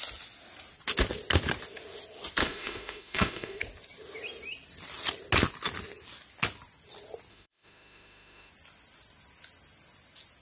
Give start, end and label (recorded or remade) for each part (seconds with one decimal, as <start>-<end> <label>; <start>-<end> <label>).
0.0-2.4 recorded; 2.4-3.6 remade; 3.6-7.3 recorded; 7.3-8.5 remade; 8.5-10.4 recorded